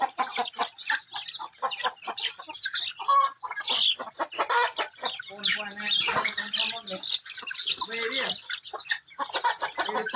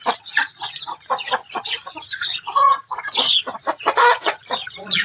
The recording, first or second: first